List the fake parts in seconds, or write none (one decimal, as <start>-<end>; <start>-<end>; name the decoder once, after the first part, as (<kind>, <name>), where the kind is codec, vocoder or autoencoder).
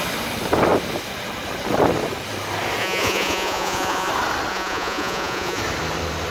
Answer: 2.8-4.1 (vocoder, Vocos); 4.5-5.6